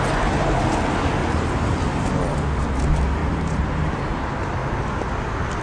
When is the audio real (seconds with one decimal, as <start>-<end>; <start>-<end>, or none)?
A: 0.0-1.2; 2.1-3.2; 3.9-5.6